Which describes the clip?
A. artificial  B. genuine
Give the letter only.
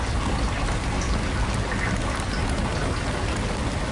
B